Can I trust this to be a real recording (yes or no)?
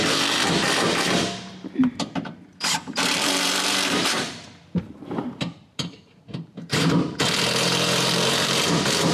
no